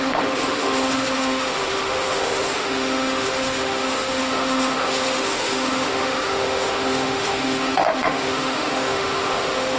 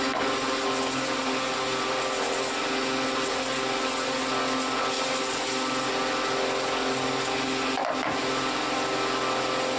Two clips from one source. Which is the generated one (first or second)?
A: first